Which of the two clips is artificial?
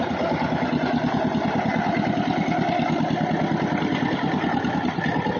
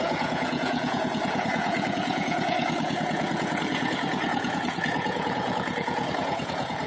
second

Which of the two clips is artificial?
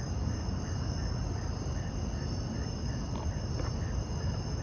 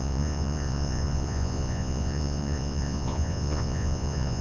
second